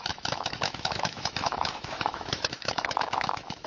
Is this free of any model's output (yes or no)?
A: no